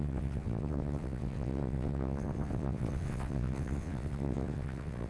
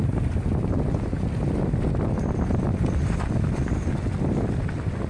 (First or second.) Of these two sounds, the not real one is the first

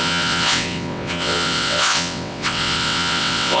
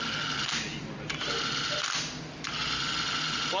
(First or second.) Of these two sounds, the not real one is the first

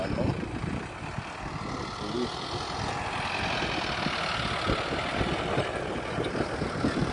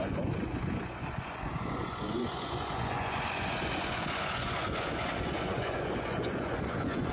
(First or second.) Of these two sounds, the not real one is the second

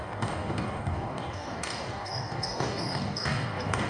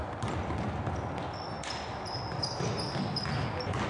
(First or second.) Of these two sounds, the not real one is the first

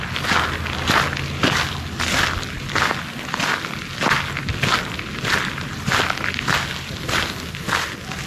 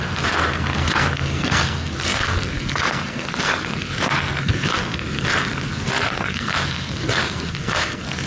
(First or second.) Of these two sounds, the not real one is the second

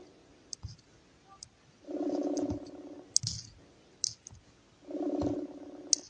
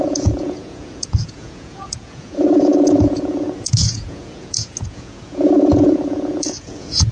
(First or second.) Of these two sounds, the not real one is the second